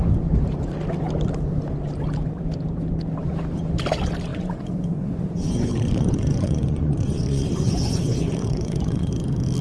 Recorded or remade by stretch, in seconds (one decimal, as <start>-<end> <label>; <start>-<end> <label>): 0.0-4.3 recorded; 4.3-9.1 remade; 9.1-9.6 recorded